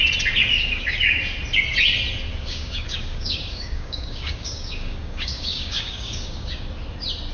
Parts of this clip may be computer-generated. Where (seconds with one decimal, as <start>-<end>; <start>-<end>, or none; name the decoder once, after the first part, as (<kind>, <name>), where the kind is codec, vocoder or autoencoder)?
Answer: 0.5-1.2 (codec, DAC); 2.3-6.7